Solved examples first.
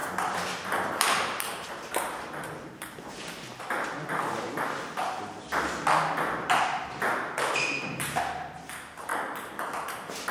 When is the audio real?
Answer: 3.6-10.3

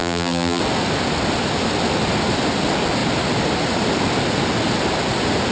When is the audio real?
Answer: 0.6-5.5

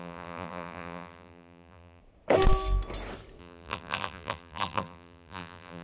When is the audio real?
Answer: 2.0-3.4

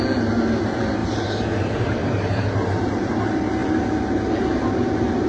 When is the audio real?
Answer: 0.0-1.0; 3.1-5.3

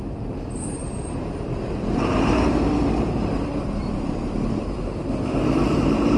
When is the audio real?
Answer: none

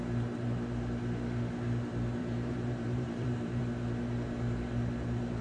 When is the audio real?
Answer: 0.0-2.2; 3.6-5.4